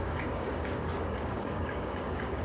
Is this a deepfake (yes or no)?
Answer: yes